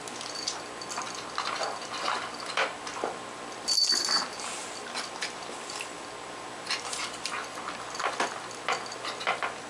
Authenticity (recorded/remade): recorded